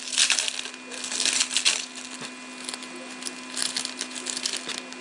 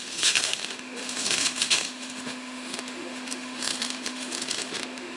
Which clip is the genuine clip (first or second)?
first